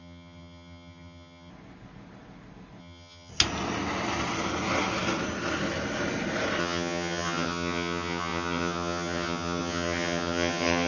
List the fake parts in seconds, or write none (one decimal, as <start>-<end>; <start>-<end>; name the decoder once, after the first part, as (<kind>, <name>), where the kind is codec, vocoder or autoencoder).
0.0-1.5 (vocoder, HiFi-GAN); 2.8-3.3; 6.6-10.9